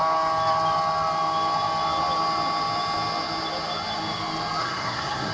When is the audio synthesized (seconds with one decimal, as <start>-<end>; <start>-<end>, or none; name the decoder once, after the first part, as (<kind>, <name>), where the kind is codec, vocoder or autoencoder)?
4.6-5.3 (codec, SNAC)

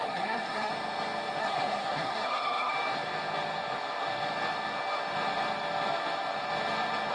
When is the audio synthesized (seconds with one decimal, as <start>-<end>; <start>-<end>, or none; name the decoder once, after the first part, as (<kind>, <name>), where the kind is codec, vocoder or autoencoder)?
0.0-0.7 (codec, SNAC); 1.4-2.7

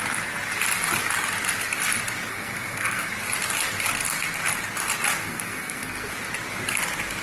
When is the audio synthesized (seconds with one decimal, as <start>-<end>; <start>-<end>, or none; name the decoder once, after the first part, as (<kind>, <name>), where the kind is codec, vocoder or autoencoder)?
2.3-3.1 (codec, SNAC); 5.2-6.1

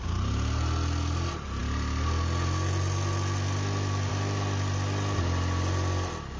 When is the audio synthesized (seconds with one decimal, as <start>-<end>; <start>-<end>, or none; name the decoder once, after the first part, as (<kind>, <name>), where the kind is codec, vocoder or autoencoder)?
none

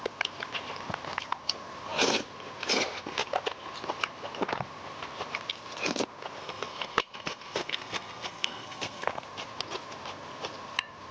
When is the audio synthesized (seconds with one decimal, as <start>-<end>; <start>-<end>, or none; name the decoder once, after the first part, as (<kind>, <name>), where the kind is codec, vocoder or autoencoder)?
6.4-9.1 (codec, SNAC)

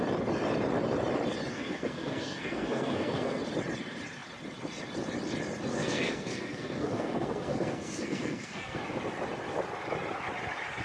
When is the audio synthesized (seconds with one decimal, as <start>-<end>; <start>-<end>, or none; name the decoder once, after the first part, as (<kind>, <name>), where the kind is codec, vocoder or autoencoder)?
1.5-3.4 (codec, SNAC); 5.7-8.8